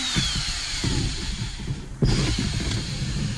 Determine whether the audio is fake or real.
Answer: fake